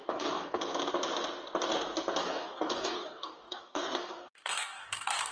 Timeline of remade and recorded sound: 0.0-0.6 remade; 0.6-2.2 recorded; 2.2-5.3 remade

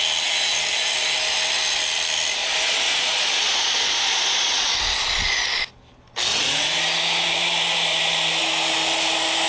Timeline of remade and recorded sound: 0.0-2.4 recorded; 2.4-4.7 remade; 4.7-6.3 recorded; 6.3-6.8 remade; 6.8-9.5 recorded

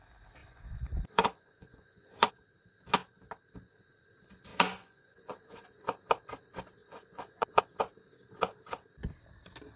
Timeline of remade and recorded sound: 0.0-0.4 recorded; 0.4-2.3 remade; 2.3-4.5 recorded; 4.5-5.8 remade; 5.8-6.8 recorded; 6.8-7.6 remade; 7.6-9.8 recorded

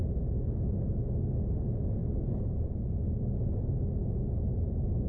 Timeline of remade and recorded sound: 0.0-5.1 recorded

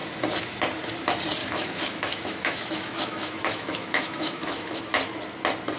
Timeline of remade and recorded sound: 0.0-1.4 recorded; 1.4-4.8 remade; 4.8-5.8 recorded

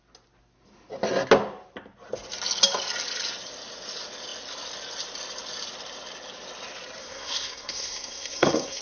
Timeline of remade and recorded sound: 0.0-7.0 recorded; 7.0-8.8 remade

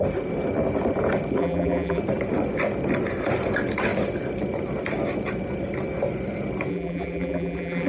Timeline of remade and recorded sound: 0.0-1.4 recorded; 1.4-2.0 remade; 2.0-6.7 recorded; 6.7-7.9 remade